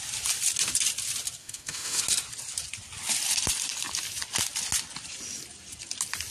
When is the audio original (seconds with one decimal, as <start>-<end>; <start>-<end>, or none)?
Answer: 0.0-1.4; 2.0-6.3